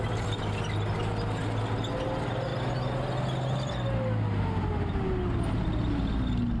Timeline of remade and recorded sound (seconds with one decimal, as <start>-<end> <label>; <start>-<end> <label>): 0.0-6.6 recorded